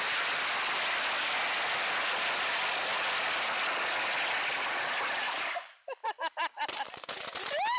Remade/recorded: recorded